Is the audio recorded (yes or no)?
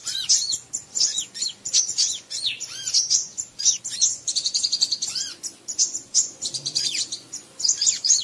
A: no